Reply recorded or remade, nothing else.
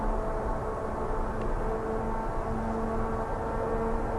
recorded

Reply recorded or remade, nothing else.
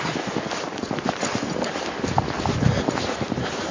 recorded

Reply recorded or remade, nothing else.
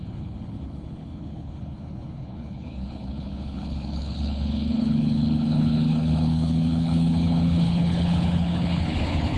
remade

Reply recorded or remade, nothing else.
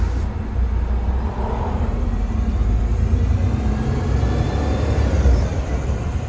recorded